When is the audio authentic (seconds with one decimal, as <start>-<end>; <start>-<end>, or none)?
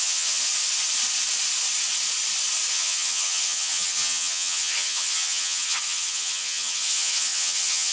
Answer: 0.5-2.7